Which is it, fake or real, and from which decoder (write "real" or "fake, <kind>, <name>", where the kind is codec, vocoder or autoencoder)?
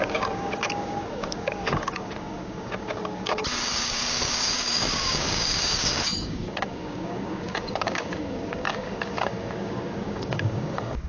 fake, codec, DAC